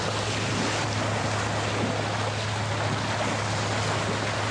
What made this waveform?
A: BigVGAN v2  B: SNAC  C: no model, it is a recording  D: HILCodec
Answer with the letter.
C